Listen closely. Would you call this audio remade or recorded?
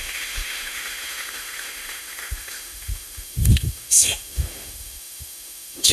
remade